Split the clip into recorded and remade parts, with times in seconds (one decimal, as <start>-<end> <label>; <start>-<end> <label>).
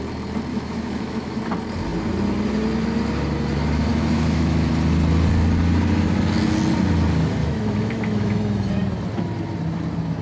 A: 0.0-0.5 recorded; 0.5-1.4 remade; 1.4-3.9 recorded; 3.9-4.7 remade; 4.7-7.4 recorded; 7.4-8.7 remade; 8.7-10.2 recorded